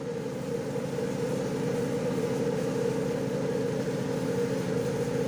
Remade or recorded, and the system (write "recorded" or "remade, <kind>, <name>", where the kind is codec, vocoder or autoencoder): recorded